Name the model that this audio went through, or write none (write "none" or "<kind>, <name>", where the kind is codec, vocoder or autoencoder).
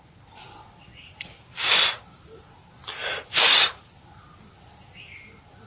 none